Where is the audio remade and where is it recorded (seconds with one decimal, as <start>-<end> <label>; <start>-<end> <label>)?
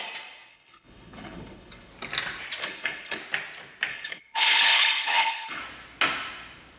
0.0-0.5 recorded; 0.5-1.9 remade; 1.9-2.6 recorded; 2.6-3.2 remade; 3.2-3.9 recorded; 3.9-5.6 remade; 5.6-6.8 recorded